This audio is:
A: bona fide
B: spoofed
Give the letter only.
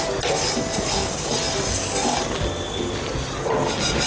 A